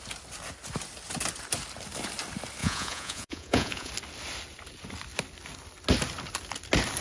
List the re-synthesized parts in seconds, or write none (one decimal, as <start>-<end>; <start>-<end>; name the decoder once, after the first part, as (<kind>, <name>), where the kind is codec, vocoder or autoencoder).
2.6-3.9 (vocoder, Vocos)